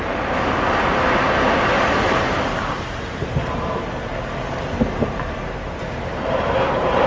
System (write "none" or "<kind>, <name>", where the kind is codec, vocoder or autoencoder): vocoder, BigVGAN v2